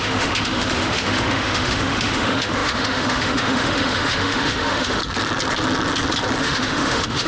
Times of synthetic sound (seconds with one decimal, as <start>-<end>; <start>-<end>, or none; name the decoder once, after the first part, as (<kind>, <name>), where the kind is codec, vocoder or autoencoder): 0.0-5.0 (autoencoder, DAC-VAE); 6.4-7.3